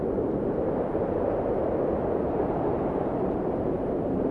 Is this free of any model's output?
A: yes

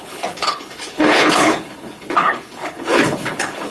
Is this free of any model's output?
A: no